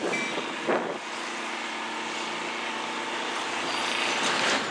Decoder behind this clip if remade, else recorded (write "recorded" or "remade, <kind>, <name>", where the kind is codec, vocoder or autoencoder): recorded